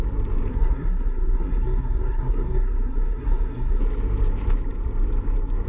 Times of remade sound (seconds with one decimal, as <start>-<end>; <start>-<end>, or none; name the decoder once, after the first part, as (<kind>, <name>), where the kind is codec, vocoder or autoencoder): 0.5-3.8 (codec, SNAC)